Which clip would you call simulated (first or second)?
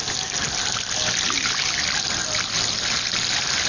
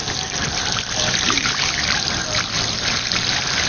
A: second